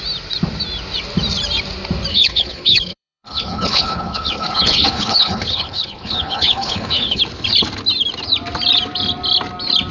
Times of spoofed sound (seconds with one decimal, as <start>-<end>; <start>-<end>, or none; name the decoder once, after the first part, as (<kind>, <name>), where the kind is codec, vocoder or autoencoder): 2.1-7.2 (codec, HILCodec)